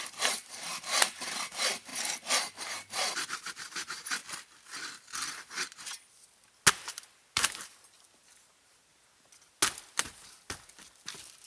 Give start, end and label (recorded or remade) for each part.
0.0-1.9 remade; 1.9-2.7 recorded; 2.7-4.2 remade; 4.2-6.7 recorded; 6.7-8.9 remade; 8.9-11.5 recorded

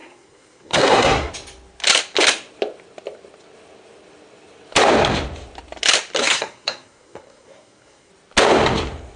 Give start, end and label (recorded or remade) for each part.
0.0-1.3 remade; 1.3-6.2 recorded; 6.2-8.1 remade; 8.1-9.2 recorded

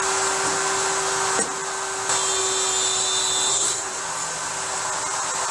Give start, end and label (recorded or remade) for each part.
0.0-3.5 recorded; 3.5-4.0 remade; 4.0-5.5 recorded

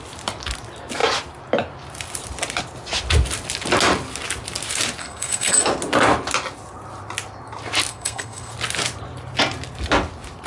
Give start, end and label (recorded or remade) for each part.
0.0-5.0 recorded; 5.0-5.6 remade; 5.6-7.9 recorded; 7.9-8.5 remade; 8.5-10.5 recorded

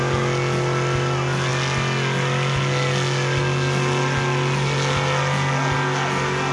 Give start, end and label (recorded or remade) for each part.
0.0-6.5 recorded